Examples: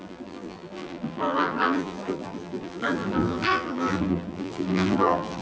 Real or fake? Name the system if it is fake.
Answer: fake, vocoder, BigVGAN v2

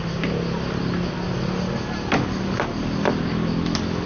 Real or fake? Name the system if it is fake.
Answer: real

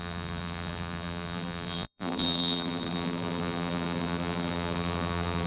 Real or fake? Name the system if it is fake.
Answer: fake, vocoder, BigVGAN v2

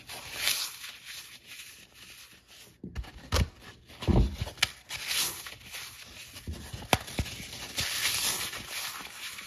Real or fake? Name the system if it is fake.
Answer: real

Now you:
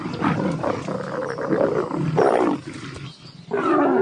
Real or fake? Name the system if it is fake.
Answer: real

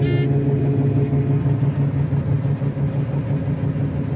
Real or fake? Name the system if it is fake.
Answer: real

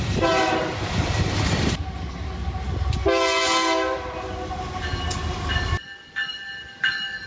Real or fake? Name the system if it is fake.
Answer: real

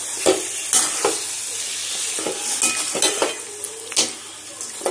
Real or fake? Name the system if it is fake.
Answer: real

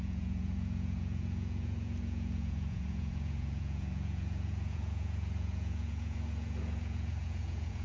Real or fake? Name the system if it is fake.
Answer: fake, vocoder, Vocos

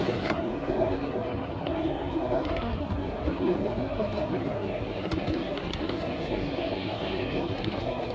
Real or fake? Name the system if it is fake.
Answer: fake, codec, SNAC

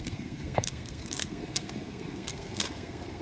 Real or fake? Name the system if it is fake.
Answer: fake, codec, SNAC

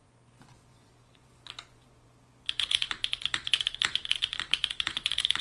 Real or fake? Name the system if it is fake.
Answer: fake, vocoder, Vocos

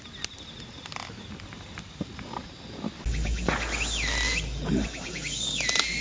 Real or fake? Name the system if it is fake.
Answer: real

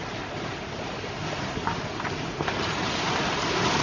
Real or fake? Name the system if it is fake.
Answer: real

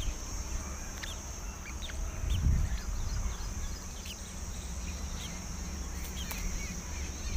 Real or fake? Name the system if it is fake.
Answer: fake, vocoder, BigVGAN v2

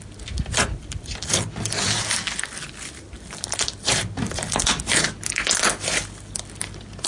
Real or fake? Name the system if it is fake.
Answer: real